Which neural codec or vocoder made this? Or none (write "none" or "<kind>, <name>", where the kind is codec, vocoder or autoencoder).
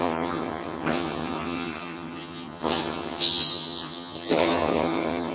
vocoder, HiFi-GAN